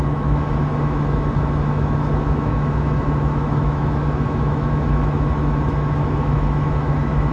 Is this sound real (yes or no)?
no